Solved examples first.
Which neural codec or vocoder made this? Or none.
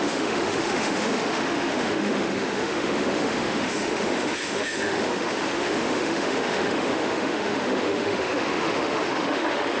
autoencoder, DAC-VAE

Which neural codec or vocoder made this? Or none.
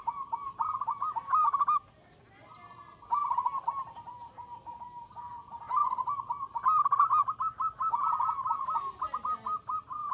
none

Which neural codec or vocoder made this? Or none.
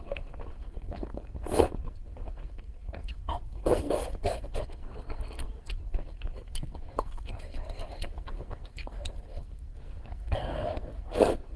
codec, SNAC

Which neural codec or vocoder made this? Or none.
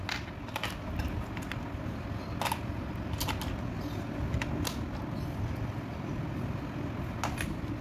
none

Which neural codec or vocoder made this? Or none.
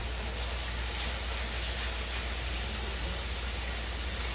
none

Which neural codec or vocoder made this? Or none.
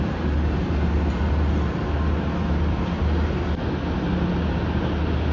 none